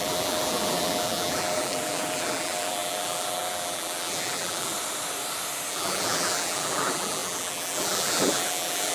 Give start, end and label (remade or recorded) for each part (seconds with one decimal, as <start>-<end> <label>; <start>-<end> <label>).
0.0-4.7 remade; 4.7-5.7 recorded; 5.7-8.9 remade

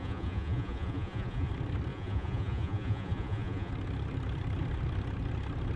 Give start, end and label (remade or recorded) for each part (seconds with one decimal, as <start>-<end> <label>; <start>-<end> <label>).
0.0-1.5 remade; 1.5-1.9 recorded; 1.9-3.7 remade; 3.7-5.8 recorded

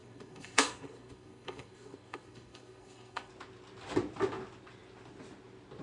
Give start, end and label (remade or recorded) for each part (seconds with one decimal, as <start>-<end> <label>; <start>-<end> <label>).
0.0-3.3 remade; 3.3-5.8 recorded

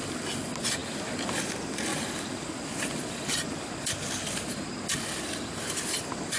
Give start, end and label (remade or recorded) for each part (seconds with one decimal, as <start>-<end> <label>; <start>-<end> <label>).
0.0-6.4 recorded

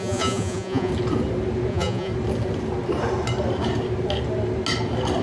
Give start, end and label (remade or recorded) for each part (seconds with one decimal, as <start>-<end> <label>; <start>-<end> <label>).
0.0-0.9 remade; 0.9-1.7 recorded; 1.7-2.1 remade; 2.1-5.2 recorded